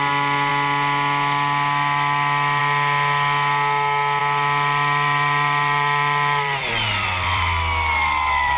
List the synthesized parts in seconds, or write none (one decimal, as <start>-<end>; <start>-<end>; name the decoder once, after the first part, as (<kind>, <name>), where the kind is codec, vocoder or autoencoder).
4.2-8.6 (vocoder, BigVGAN v2)